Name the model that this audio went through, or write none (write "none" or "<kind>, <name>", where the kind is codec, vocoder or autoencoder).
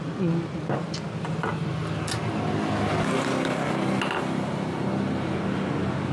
none